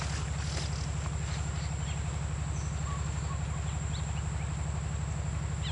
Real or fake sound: real